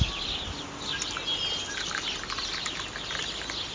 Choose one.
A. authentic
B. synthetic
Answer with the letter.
A